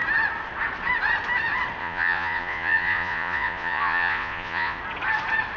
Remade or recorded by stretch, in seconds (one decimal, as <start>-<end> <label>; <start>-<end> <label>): 0.0-1.8 recorded; 1.8-4.8 remade; 4.8-5.6 recorded